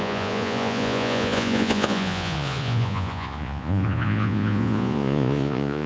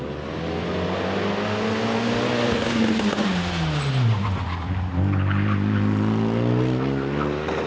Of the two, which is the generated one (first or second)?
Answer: first